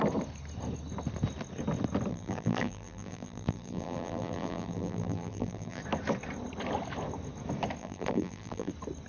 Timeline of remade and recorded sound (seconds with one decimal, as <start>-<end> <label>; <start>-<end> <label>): 0.0-2.1 recorded; 2.1-5.8 remade; 5.8-7.8 recorded; 7.8-8.7 remade; 8.7-9.1 recorded